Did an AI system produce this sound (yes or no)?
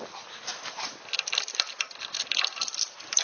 no